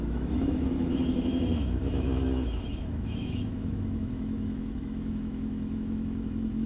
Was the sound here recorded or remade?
remade